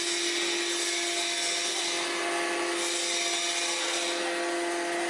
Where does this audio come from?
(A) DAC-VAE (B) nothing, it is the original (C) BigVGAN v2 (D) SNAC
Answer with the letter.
B